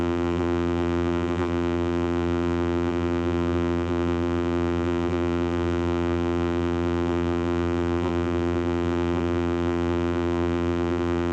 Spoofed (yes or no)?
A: yes